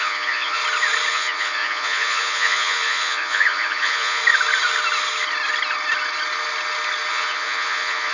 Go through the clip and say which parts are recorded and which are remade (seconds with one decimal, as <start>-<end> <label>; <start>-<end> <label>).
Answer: 0.0-0.6 remade; 0.6-1.1 recorded; 1.1-4.2 remade; 4.2-7.1 recorded; 7.1-8.1 remade